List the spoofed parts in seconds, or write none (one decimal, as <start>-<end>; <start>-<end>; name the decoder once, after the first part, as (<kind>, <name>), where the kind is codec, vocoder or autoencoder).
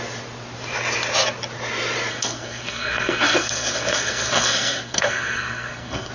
2.1-6.1 (codec, SNAC)